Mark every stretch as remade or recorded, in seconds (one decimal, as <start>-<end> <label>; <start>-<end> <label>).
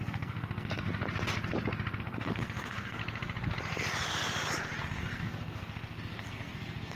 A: 0.0-0.9 remade; 0.9-2.0 recorded; 2.0-3.0 remade; 3.0-4.8 recorded; 4.8-7.0 remade